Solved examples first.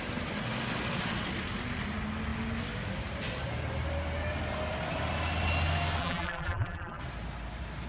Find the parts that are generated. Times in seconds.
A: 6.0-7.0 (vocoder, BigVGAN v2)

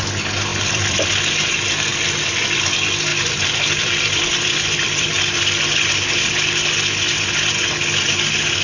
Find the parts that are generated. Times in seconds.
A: 0.5-1.2 (vocoder, BigVGAN v2); 1.9-2.7; 3.1-6.7

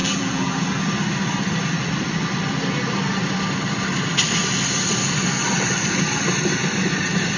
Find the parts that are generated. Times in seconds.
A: 0.0-0.8 (vocoder, BigVGAN v2)